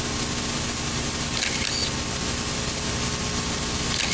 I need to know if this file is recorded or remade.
recorded